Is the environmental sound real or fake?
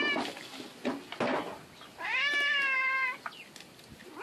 real